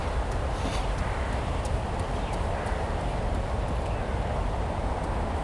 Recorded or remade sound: recorded